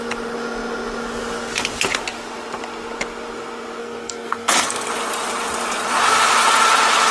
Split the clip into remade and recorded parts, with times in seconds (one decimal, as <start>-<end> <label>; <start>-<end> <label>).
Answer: 0.0-3.8 recorded; 3.8-4.9 remade; 4.9-7.1 recorded